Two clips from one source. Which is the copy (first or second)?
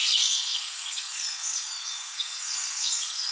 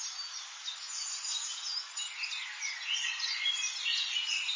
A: first